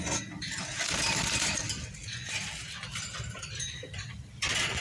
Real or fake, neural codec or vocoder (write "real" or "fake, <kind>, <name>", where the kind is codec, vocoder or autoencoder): fake, vocoder, BigVGAN v2